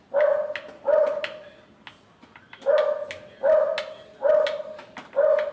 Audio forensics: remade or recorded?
recorded